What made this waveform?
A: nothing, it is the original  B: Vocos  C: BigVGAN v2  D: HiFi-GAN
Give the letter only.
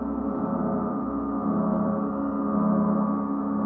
A